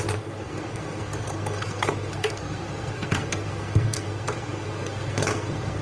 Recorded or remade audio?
remade